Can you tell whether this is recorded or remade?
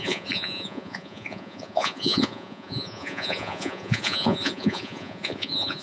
remade